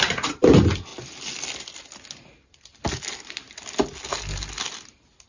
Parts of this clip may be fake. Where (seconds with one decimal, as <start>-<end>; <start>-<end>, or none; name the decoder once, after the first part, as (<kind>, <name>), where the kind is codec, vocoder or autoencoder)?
none

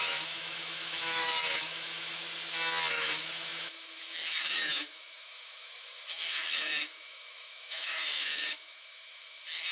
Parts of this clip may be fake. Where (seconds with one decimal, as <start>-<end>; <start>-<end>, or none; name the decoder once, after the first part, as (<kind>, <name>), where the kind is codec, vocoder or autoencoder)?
0.0-2.2 (autoencoder, DAC-VAE); 2.9-9.7

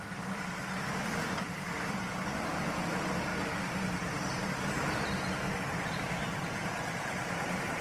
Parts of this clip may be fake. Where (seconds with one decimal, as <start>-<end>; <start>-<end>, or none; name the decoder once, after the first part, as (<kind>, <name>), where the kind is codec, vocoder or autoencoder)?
0.0-7.8 (vocoder, BigVGAN v2)

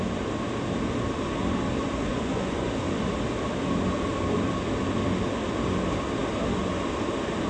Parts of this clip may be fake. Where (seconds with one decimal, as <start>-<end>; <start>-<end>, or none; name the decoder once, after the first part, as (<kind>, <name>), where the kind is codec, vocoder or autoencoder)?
2.1-2.7 (vocoder, Vocos)

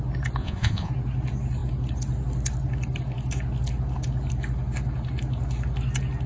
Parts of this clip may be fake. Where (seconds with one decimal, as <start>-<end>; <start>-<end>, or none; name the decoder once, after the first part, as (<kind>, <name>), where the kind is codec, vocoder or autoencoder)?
0.4-0.9 (vocoder, Vocos)